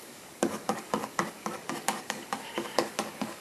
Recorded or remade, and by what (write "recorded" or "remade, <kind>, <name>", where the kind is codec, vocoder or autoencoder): remade, codec, DAC